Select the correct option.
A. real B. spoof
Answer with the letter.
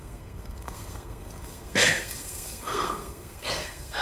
B